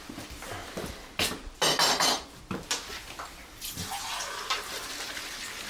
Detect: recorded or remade recorded